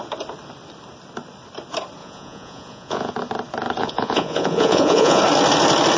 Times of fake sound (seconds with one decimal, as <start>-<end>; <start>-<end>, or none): 2.0-3.1; 3.8-5.2